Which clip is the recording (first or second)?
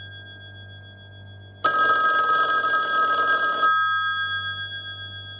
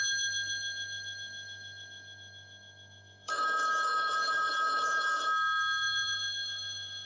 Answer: first